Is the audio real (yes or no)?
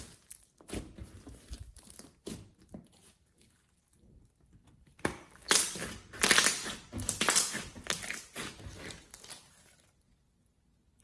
yes